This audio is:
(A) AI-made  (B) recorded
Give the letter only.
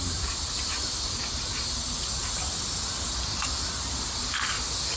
B